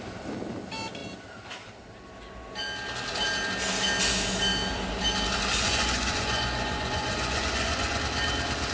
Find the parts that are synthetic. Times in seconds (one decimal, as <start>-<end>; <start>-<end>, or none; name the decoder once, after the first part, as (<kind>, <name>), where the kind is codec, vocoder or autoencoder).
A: 5.5-8.0 (vocoder, Vocos)